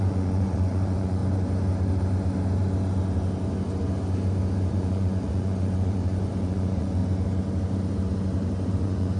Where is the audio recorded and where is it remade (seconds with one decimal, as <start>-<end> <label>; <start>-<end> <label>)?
0.0-1.2 remade; 1.2-4.7 recorded; 4.7-7.0 remade; 7.0-8.7 recorded; 8.7-9.2 remade